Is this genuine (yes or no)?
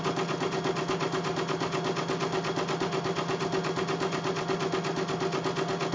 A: yes